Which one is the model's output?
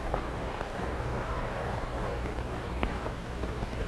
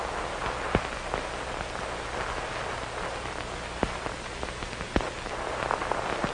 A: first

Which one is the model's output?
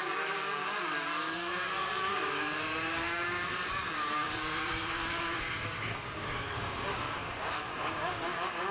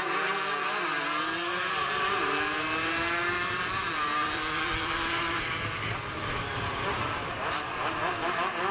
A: first